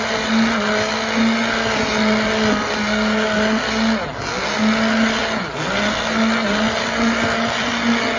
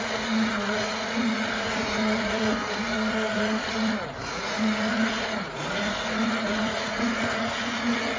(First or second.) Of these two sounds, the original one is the first